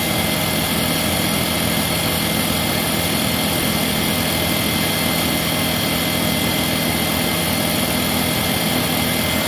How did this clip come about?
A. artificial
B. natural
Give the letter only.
B